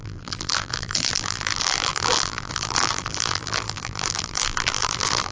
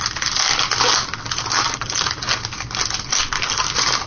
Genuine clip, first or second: second